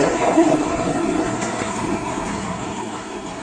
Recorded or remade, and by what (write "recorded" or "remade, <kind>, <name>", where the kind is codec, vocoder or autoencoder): remade, codec, SNAC